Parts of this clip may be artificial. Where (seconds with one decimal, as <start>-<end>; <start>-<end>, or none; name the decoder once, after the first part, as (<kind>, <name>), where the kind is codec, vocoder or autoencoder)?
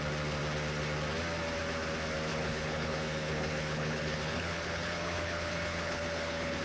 2.3-6.6 (codec, HILCodec)